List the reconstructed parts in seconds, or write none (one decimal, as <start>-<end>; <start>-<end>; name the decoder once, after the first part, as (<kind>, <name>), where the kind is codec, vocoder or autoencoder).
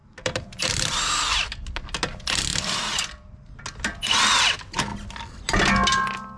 0.0-1.2 (vocoder, BigVGAN v2); 2.5-3.6